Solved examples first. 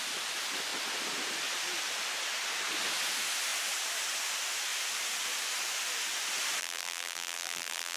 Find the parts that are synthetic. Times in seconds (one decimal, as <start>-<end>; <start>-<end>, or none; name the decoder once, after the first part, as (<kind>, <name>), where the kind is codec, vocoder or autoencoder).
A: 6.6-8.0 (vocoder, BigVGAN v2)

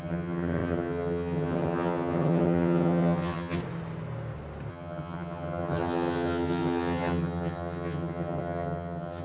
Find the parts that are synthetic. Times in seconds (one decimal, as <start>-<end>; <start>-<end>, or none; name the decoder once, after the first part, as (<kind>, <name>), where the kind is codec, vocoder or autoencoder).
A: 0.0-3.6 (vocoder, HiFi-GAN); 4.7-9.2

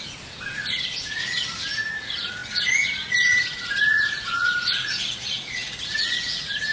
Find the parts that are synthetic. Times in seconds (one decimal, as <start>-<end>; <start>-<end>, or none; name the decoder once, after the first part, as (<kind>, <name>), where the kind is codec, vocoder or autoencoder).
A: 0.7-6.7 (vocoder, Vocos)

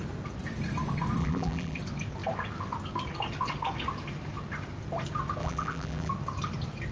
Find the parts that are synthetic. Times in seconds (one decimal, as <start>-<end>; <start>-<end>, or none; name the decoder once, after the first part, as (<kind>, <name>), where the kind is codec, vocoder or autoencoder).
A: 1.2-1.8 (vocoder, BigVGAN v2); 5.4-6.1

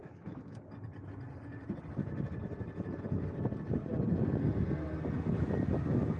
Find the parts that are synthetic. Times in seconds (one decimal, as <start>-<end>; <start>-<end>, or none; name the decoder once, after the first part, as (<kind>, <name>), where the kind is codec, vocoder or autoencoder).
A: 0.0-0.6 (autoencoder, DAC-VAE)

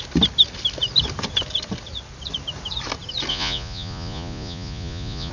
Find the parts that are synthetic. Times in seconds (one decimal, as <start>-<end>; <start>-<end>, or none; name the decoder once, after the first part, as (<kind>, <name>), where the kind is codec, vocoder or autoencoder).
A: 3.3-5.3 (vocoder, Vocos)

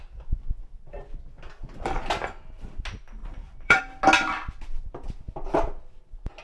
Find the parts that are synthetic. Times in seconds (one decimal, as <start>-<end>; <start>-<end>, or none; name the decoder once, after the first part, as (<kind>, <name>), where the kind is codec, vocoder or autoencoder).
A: 0.6-1.2 (vocoder, BigVGAN v2); 3.2-3.8